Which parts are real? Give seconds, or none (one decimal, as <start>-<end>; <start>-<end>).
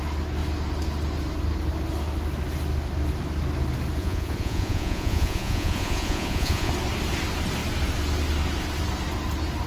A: 0.0-4.0; 6.7-9.7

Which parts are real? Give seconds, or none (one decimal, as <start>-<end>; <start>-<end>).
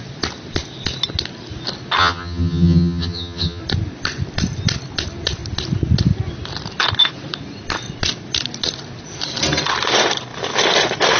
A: 0.0-2.0; 3.6-11.2